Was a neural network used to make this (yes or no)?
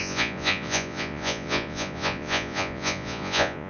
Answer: yes